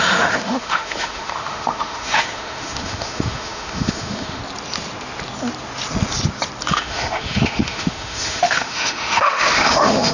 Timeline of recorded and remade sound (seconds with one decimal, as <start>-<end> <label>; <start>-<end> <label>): 0.0-4.4 remade; 4.4-6.7 recorded; 6.7-10.1 remade